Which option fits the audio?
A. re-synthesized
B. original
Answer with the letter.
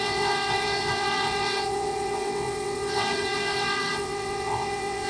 A